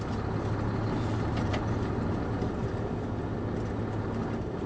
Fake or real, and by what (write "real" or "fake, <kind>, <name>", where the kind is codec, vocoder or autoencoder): real